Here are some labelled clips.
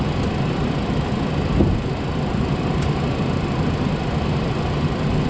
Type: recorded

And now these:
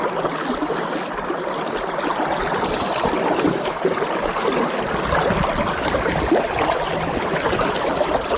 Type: recorded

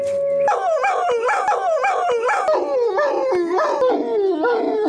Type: recorded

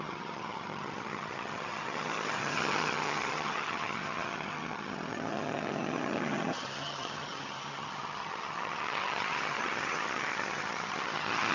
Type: remade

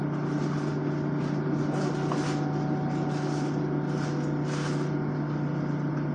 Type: recorded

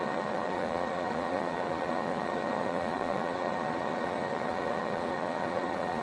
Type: remade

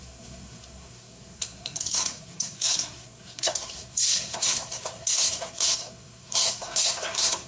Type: remade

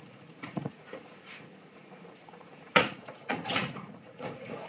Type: remade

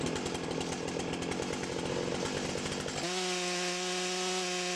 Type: recorded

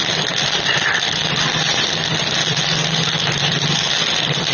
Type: recorded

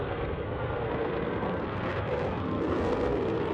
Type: remade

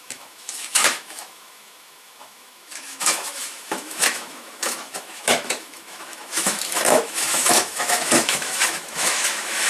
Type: remade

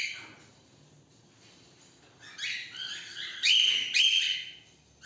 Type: recorded